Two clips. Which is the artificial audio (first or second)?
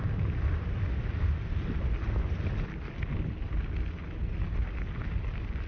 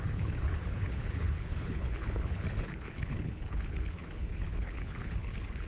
second